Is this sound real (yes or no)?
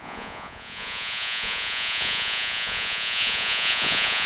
no